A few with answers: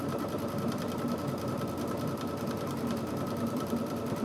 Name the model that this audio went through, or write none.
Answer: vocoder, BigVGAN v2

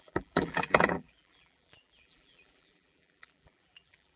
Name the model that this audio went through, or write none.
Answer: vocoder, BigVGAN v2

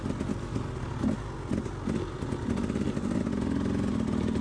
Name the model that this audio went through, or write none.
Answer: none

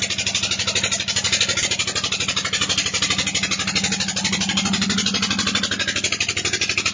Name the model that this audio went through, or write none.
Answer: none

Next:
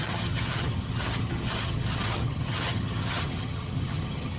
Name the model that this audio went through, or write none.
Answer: vocoder, HiFi-GAN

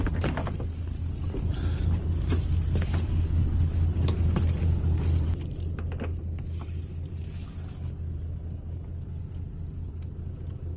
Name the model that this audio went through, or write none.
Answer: none